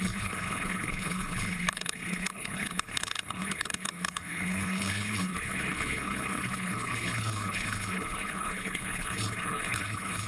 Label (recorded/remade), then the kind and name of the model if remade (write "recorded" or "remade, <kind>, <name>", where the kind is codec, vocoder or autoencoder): remade, codec, HILCodec